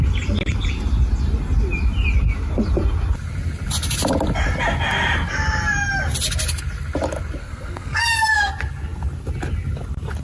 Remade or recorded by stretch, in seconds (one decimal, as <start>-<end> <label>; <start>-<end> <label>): 0.0-7.4 recorded; 7.4-8.5 remade; 8.5-10.2 recorded